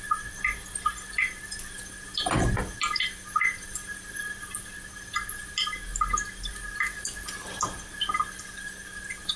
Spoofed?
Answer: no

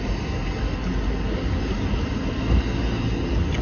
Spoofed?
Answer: no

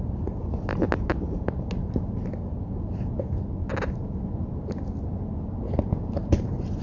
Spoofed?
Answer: no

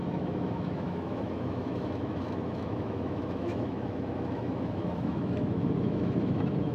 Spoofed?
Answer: yes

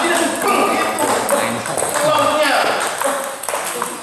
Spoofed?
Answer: no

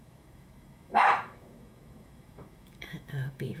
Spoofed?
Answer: yes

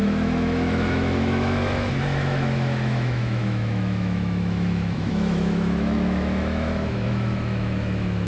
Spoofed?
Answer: yes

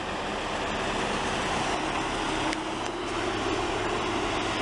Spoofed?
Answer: no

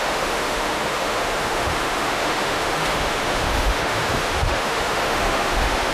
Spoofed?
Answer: yes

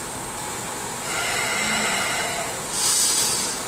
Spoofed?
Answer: no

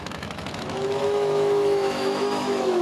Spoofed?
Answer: yes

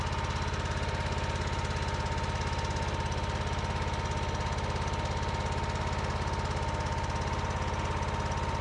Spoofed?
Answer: no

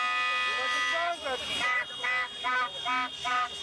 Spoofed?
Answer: no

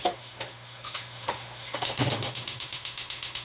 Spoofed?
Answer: yes